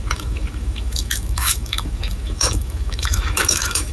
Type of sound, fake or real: fake